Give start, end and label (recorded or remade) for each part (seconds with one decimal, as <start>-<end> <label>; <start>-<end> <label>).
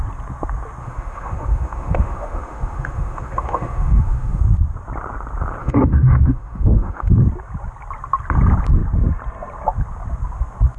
0.0-0.8 recorded; 0.8-4.4 remade; 4.4-5.6 recorded; 5.6-7.1 remade; 7.1-10.8 recorded